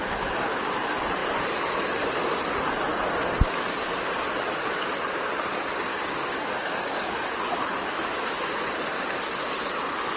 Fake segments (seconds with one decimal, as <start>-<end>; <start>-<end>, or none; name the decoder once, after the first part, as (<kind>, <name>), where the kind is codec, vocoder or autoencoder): 5.9-7.2 (codec, DAC)